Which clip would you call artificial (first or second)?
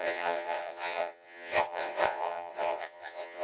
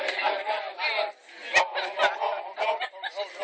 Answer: first